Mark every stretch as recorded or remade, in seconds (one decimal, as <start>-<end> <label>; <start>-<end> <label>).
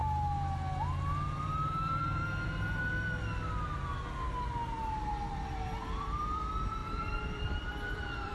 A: 0.0-1.1 recorded; 1.1-2.2 remade; 2.2-5.8 recorded; 5.8-8.3 remade